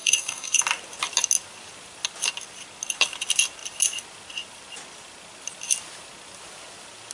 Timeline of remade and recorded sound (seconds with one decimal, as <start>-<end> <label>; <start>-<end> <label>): 0.0-0.6 remade; 0.6-7.1 recorded